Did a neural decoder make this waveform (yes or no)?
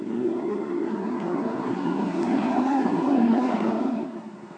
yes